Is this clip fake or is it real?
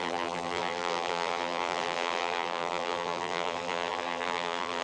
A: fake